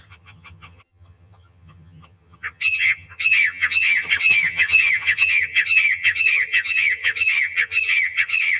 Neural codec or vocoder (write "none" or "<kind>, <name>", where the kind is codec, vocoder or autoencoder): vocoder, HiFi-GAN